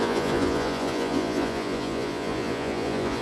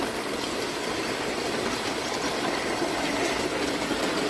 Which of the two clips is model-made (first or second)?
first